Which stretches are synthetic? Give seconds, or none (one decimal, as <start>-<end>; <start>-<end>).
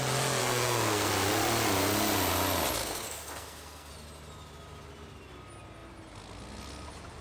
0.4-1.1; 2.8-3.9